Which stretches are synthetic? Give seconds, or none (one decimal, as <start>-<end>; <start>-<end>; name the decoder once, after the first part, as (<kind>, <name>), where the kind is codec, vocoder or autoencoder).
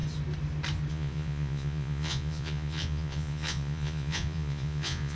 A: 0.9-5.2 (vocoder, Vocos)